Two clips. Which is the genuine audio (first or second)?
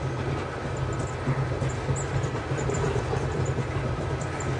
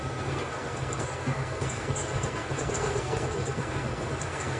first